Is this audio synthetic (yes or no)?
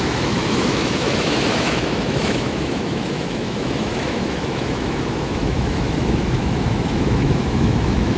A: yes